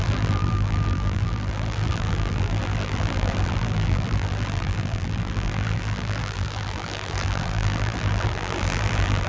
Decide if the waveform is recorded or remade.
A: remade